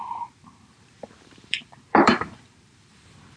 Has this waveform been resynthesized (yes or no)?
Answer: yes